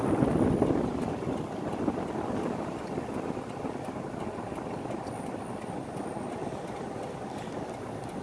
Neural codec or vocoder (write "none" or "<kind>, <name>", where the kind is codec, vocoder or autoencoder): none